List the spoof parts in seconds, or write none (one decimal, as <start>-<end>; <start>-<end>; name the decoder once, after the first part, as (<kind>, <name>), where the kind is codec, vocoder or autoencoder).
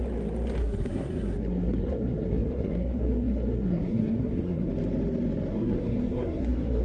0.6-4.7 (codec, SNAC); 5.5-6.8